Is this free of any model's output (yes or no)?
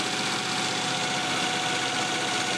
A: yes